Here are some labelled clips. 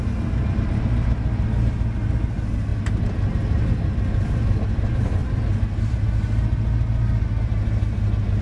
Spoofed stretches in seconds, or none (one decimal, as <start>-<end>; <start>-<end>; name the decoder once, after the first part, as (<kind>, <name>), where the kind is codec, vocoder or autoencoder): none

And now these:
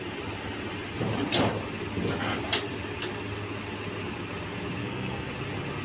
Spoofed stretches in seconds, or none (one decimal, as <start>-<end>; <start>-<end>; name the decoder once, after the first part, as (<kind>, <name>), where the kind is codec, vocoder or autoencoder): 4.8-5.3 (codec, SNAC)

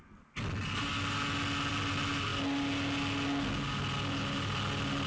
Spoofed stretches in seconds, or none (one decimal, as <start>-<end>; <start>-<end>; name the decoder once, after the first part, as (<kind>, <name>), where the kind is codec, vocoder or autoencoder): none

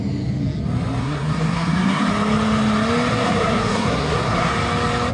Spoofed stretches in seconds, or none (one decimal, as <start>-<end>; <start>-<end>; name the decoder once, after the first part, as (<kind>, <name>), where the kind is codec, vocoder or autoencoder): 1.0-2.1 (codec, SNAC); 3.1-4.5

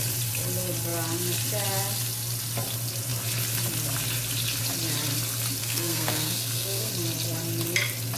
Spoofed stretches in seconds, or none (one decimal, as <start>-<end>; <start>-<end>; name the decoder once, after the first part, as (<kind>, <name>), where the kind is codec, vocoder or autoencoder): 5.6-6.9 (codec, SNAC)

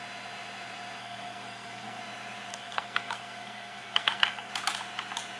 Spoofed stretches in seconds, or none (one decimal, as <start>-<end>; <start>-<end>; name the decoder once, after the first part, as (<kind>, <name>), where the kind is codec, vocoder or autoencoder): 1.0-2.0 (codec, SNAC); 2.5-4.5

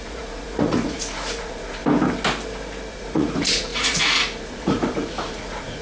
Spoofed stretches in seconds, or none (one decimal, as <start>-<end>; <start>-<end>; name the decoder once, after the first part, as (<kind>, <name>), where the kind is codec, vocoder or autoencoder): 0.0-1.8 (vocoder, Vocos); 2.9-5.8